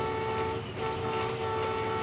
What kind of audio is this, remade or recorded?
recorded